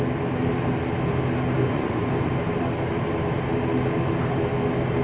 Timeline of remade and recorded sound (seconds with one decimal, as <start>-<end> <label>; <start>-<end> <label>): 0.0-1.6 recorded; 1.6-2.3 remade; 2.3-5.0 recorded